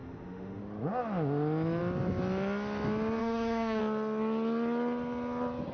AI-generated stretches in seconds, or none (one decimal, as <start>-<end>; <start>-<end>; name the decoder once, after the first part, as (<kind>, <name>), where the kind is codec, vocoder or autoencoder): 0.0-0.6 (autoencoder, DAC-VAE); 3.2-3.8